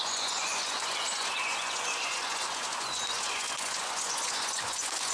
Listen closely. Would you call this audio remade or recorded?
remade